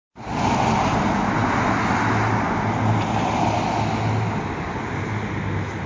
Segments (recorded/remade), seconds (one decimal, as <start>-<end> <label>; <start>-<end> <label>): 0.0-5.9 recorded